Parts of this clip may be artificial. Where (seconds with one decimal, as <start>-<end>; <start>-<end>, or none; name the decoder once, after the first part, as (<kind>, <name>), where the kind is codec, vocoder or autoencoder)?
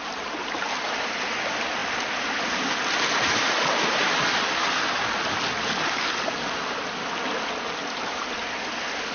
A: none